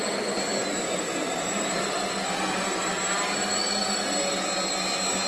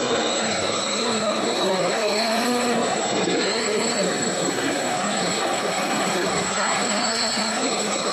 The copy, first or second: second